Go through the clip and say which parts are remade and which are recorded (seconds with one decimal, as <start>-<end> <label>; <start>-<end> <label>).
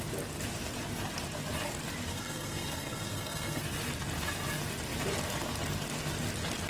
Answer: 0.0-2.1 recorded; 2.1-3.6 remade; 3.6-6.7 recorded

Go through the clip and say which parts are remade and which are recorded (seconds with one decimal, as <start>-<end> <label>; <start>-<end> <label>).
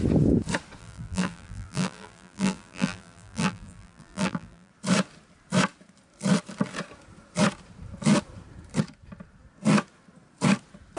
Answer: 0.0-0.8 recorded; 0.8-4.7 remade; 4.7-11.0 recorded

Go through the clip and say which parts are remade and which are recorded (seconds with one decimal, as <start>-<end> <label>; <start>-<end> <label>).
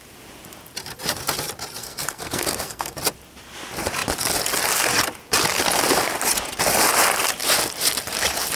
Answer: 0.0-1.8 recorded; 1.8-3.0 remade; 3.0-8.6 recorded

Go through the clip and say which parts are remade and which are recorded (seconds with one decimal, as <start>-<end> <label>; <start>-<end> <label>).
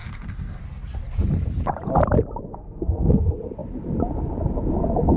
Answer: 0.0-0.6 remade; 0.6-2.5 recorded; 2.5-3.2 remade; 3.2-5.2 recorded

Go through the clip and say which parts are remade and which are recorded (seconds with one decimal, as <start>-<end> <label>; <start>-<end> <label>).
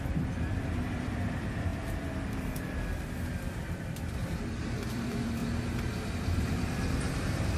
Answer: 0.0-5.4 remade; 5.4-6.1 recorded; 6.1-7.6 remade